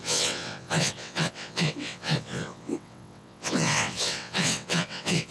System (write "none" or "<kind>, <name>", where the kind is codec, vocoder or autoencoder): vocoder, WaveNeXt